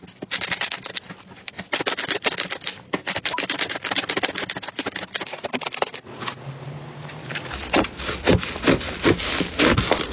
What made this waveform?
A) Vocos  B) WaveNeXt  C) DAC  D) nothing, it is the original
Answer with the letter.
D